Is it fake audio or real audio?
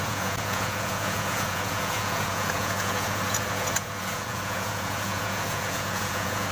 fake